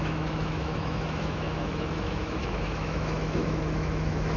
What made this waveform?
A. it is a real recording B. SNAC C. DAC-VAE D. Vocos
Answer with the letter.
C